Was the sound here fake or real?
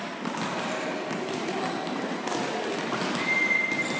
real